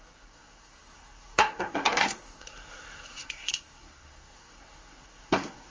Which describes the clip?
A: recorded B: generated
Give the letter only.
B